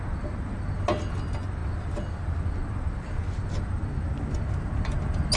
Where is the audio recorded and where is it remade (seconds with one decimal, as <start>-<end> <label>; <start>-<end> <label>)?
0.0-5.4 recorded